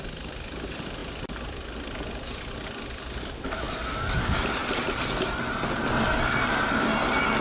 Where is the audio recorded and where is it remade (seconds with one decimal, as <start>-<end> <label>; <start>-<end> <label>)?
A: 0.0-7.4 recorded